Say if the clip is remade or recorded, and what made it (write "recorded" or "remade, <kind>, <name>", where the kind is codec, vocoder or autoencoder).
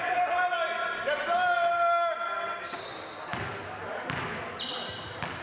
recorded